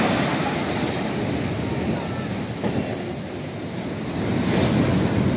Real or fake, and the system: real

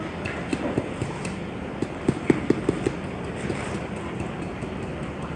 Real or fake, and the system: real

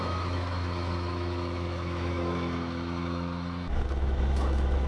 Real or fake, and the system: fake, autoencoder, DAC-VAE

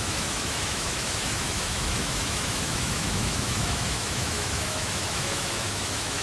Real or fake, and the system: fake, autoencoder, DAC-VAE